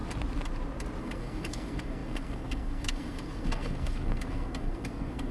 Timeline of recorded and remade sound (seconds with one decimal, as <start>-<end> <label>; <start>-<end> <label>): 0.0-1.0 recorded; 1.0-5.3 remade